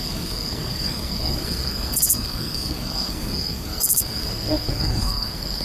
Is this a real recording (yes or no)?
no